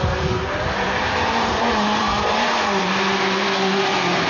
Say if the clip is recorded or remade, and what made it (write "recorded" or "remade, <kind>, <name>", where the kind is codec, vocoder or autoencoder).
remade, vocoder, BigVGAN v2